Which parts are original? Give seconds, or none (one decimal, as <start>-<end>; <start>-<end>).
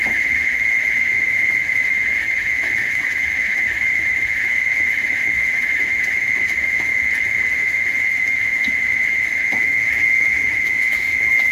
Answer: 6.9-7.5